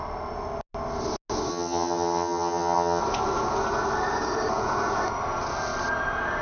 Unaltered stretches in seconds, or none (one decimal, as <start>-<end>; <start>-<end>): 0.0-1.5; 3.0-6.4